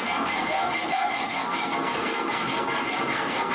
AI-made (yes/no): yes